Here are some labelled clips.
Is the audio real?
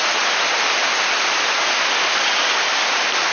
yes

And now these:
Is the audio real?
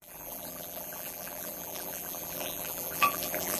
no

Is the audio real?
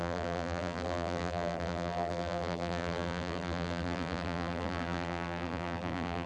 no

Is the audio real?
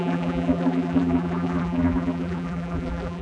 no